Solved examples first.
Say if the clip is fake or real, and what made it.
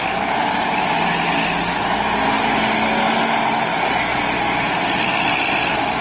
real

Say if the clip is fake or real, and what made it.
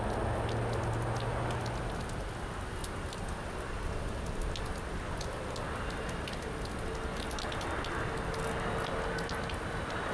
real